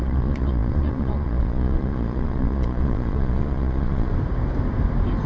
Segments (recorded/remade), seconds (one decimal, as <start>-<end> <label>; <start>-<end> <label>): 0.0-4.1 remade; 4.1-5.3 recorded